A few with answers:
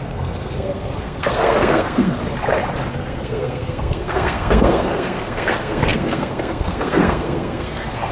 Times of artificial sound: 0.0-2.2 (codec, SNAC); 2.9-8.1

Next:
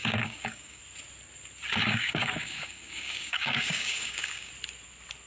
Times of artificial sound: 0.0-0.8 (codec, DAC); 1.8-4.5

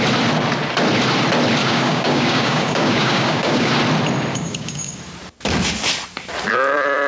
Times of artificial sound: 1.6-3.7 (codec, DAC); 4.3-5.0